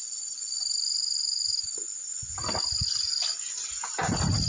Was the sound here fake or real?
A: real